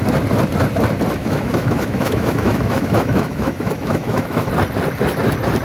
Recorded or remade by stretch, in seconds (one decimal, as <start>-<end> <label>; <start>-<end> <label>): 0.0-1.2 recorded; 1.2-4.5 remade; 4.5-5.6 recorded